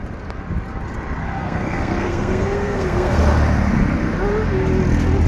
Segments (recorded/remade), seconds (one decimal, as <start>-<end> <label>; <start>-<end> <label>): 0.0-1.4 recorded; 1.4-3.2 remade; 3.2-5.3 recorded